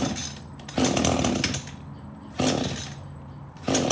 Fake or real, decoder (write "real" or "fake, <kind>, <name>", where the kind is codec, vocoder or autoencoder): real